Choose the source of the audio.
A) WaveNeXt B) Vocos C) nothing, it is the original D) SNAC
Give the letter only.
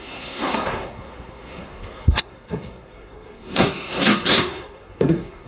D